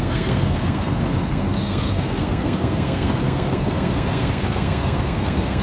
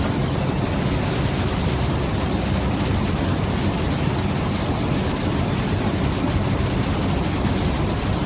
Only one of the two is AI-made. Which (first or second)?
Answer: first